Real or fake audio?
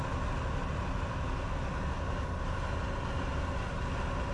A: real